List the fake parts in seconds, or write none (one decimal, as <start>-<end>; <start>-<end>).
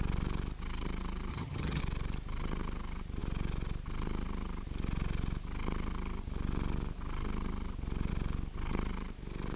1.3-1.8